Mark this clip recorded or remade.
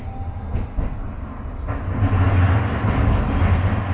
recorded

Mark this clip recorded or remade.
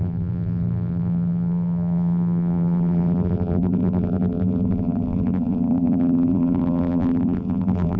remade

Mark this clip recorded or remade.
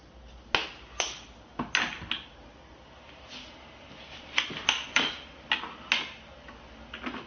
recorded